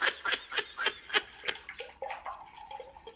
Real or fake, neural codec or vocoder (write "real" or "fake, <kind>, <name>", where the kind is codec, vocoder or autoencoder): real